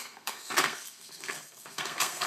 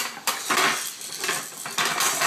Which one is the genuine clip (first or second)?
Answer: second